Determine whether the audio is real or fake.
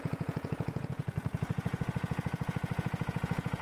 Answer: fake